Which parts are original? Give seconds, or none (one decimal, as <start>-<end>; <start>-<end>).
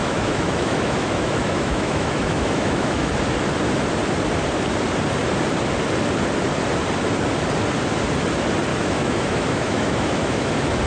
3.1-8.7; 10.5-10.9